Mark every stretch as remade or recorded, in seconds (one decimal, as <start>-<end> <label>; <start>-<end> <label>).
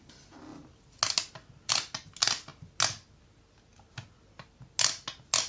0.0-5.5 recorded